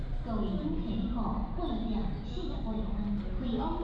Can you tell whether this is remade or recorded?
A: recorded